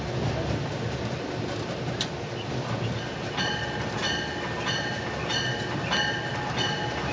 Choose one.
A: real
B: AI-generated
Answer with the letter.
A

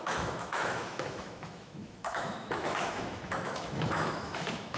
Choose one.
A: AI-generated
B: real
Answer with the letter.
A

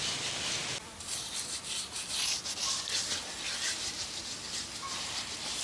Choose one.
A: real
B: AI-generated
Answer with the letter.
A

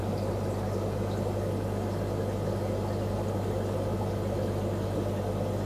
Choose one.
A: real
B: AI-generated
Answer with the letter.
A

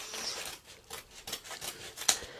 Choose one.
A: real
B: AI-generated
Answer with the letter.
A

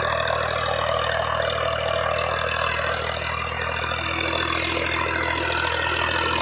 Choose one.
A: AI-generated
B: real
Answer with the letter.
B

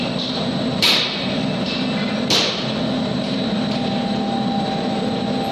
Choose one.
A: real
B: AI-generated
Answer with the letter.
B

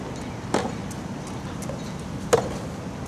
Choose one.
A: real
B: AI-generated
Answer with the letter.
A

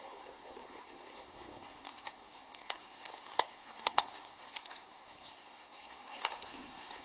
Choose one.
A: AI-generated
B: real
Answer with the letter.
A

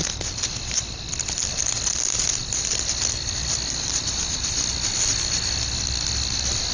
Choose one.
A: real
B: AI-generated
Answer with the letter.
A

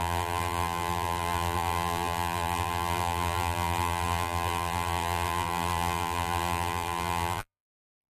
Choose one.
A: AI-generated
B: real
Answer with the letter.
A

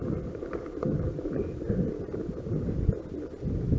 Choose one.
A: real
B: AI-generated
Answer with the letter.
A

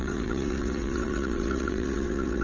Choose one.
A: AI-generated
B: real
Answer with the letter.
A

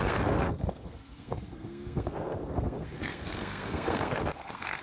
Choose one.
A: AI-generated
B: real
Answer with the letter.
A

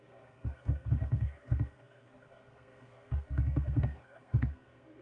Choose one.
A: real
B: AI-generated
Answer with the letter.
B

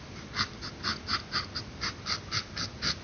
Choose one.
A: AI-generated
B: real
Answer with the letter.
B